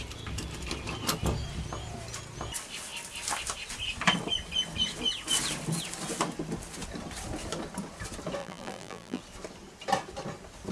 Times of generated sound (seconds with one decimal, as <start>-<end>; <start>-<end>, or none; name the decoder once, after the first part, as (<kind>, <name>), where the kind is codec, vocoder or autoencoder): 8.4-9.2 (vocoder, BigVGAN v2)